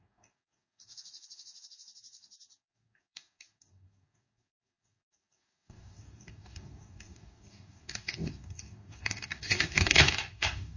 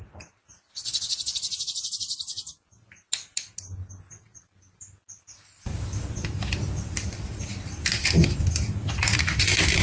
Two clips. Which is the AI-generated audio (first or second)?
first